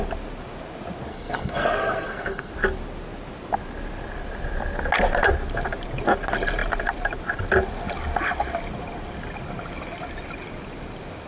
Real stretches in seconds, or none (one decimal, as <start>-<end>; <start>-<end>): 0.0-1.1; 2.5-11.3